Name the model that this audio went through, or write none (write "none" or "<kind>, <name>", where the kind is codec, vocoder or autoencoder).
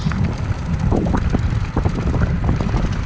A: none